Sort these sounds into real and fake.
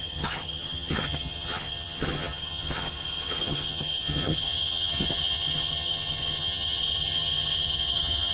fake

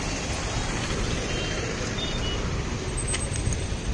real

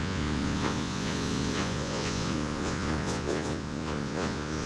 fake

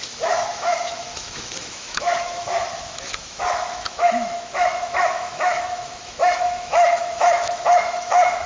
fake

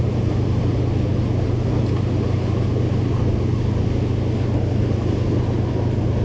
real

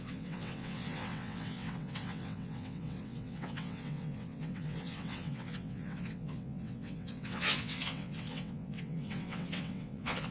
fake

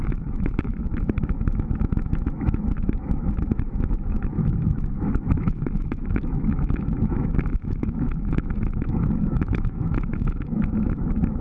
fake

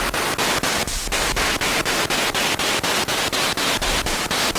real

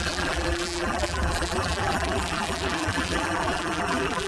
fake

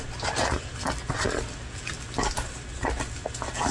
real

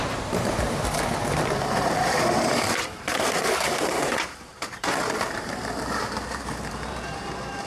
fake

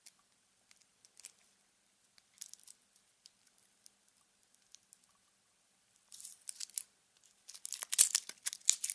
real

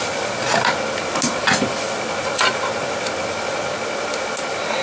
real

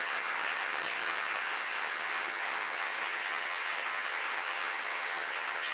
fake